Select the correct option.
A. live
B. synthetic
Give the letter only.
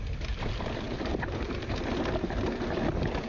A